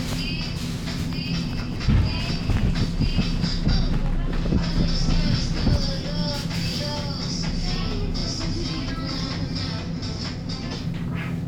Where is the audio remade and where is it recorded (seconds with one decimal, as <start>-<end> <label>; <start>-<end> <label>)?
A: 0.0-11.5 recorded